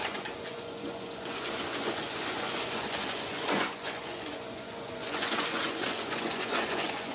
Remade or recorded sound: remade